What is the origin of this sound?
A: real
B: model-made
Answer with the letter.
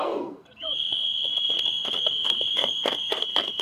B